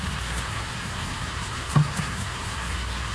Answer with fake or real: fake